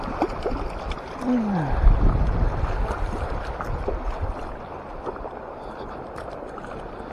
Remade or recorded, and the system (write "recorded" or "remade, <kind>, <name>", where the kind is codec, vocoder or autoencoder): recorded